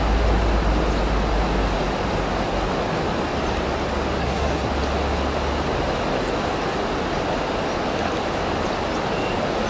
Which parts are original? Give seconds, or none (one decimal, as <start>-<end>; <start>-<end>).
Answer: 0.0-4.2; 4.7-9.7